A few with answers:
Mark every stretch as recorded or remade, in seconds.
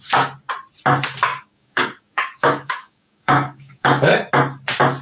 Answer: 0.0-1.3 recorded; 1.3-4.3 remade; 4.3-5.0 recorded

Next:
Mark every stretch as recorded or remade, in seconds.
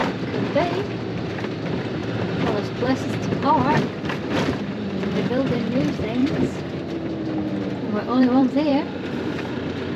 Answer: 0.0-6.2 remade; 6.2-7.5 recorded; 7.5-10.0 remade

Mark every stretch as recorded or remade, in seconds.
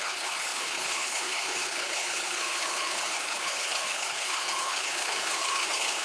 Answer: 0.0-6.0 remade